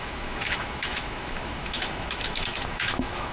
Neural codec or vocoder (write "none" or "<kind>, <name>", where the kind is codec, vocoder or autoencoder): autoencoder, DAC-VAE